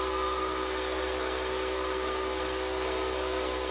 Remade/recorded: remade